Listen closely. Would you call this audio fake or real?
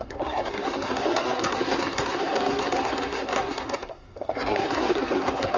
fake